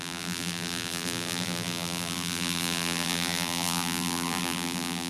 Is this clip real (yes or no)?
no